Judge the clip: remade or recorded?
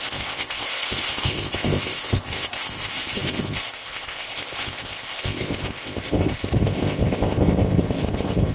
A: remade